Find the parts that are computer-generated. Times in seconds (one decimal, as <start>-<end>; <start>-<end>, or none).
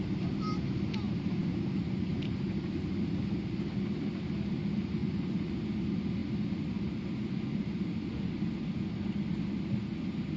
5.0-5.5